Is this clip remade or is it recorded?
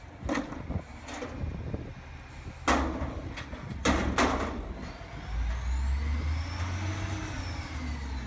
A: recorded